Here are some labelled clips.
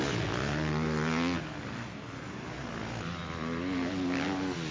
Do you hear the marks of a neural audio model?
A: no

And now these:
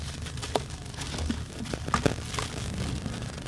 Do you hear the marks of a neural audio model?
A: no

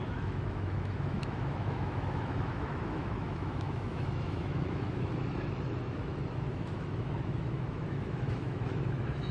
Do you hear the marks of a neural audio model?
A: yes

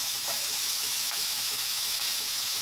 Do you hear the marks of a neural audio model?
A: yes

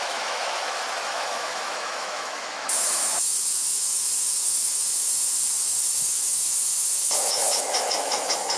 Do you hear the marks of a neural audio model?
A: yes